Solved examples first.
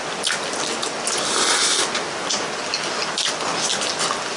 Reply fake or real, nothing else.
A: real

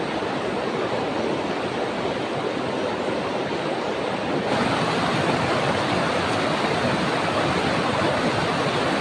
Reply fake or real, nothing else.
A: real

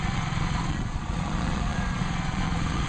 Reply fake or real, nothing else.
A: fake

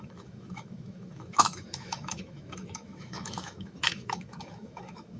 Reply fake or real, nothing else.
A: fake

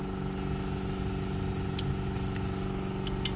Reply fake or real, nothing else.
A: real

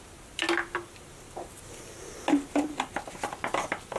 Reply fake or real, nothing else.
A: real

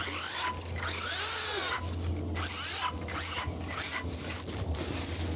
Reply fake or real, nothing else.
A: real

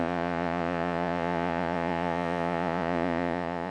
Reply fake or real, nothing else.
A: fake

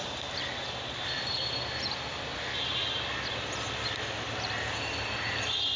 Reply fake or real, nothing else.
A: real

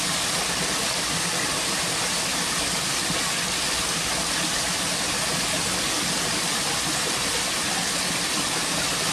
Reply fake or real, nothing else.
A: real